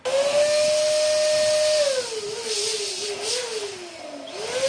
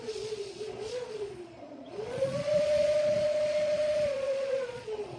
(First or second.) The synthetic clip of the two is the second